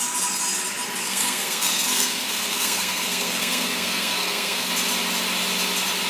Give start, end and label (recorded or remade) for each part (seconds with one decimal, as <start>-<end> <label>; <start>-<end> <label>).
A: 0.0-1.0 recorded; 1.0-4.7 remade; 4.7-6.1 recorded